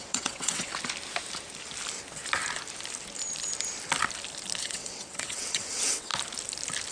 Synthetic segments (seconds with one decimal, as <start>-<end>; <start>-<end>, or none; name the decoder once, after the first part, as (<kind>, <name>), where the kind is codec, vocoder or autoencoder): 0.0-0.7 (vocoder, WaveNeXt); 4.6-6.1